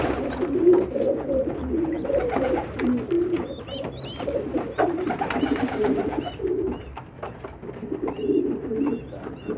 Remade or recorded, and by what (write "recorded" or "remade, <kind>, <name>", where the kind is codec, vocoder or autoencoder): remade, vocoder, BigVGAN v2